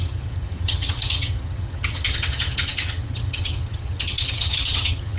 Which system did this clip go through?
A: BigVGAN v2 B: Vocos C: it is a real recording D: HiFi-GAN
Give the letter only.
D